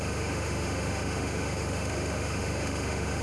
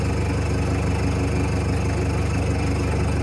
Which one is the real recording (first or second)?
second